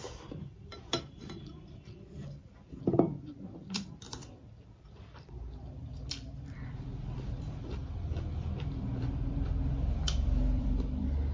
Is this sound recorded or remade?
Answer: remade